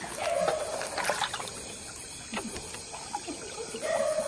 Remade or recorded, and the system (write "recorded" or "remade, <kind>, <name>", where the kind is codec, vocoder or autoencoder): recorded